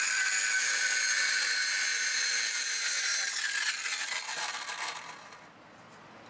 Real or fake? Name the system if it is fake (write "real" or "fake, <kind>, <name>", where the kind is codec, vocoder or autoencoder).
real